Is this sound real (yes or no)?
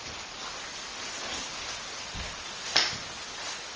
yes